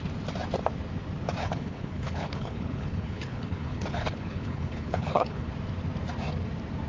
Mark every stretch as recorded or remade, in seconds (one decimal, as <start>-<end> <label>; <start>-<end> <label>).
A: 0.0-1.4 recorded; 1.4-5.5 remade; 5.5-6.9 recorded